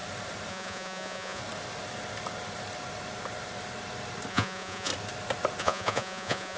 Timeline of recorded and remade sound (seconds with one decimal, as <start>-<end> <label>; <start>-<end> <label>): 0.0-0.5 recorded; 0.5-1.4 remade; 1.4-4.3 recorded; 4.3-4.9 remade; 4.9-5.6 recorded; 5.6-6.6 remade